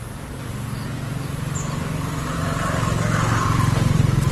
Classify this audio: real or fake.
fake